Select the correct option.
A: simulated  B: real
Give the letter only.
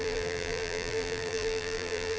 A